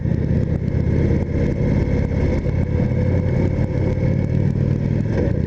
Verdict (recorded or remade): recorded